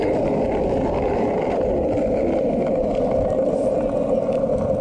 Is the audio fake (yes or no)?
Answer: no